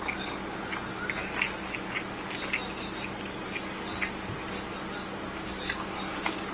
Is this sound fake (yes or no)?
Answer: no